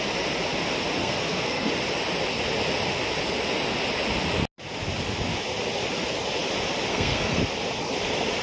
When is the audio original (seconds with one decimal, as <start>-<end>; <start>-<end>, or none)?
0.0-1.0; 1.7-6.9; 7.4-8.4